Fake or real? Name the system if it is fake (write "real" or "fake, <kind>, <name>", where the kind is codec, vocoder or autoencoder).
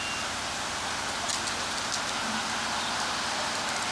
real